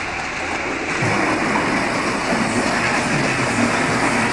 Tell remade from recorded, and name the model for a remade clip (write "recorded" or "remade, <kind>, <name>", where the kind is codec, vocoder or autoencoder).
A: recorded